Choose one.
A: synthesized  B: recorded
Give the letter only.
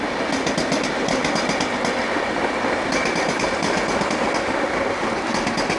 B